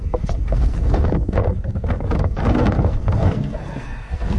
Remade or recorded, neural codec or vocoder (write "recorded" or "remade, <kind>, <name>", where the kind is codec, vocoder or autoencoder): remade, codec, SNAC